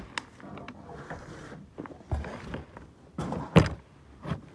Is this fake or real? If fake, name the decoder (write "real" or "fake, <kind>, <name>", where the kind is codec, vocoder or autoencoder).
real